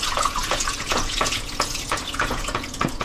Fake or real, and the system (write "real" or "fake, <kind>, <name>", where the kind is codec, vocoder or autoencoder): fake, vocoder, Vocos